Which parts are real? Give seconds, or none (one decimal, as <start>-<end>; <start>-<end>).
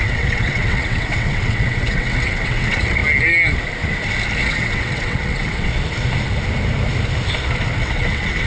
3.0-4.4; 5.7-7.8